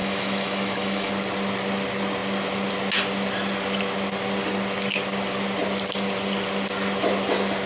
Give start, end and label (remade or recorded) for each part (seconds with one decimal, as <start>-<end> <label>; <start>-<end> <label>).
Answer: 0.0-1.1 remade; 1.1-7.7 recorded